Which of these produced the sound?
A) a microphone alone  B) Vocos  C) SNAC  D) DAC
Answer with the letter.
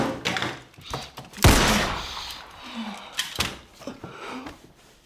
A